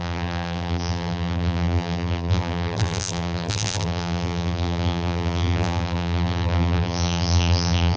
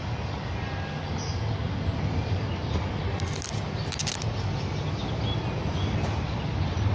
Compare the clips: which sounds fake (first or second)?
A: first